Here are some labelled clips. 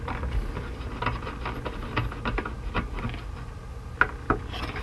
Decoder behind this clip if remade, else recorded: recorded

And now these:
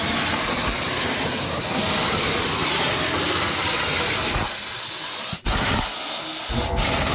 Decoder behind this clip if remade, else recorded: recorded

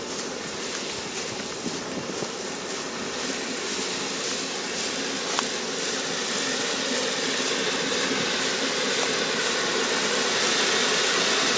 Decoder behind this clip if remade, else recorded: recorded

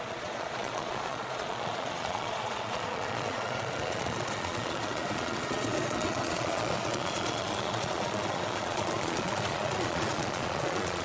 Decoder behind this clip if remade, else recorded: remade, vocoder, Vocos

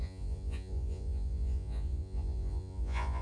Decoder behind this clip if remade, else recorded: remade, vocoder, Vocos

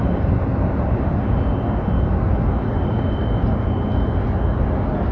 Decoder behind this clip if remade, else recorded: recorded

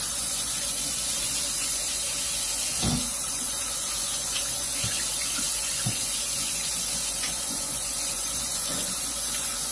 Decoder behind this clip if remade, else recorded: remade, vocoder, Vocos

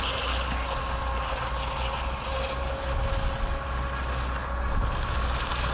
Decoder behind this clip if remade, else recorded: recorded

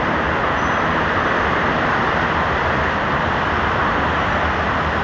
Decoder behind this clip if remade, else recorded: recorded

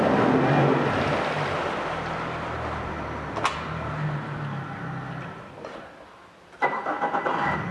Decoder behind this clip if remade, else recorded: recorded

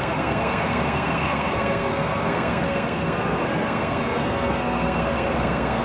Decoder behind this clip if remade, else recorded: remade, codec, SNAC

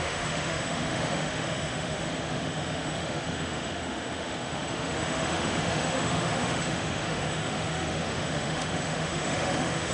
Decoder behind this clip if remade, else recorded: remade, autoencoder, DAC-VAE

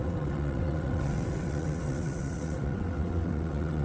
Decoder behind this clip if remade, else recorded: remade, vocoder, WaveNeXt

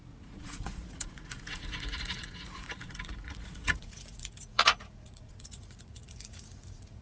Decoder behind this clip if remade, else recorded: remade, vocoder, Vocos